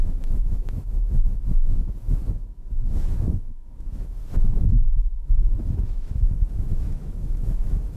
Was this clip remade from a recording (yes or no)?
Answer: yes